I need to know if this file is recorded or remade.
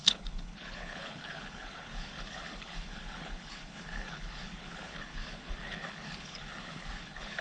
remade